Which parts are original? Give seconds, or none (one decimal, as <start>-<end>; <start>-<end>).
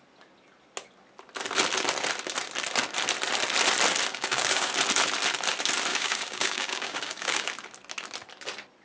0.0-4.1; 4.7-5.9; 7.5-8.8